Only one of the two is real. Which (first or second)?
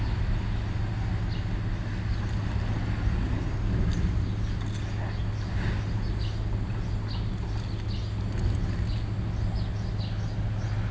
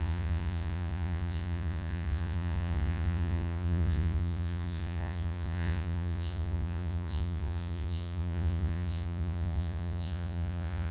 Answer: first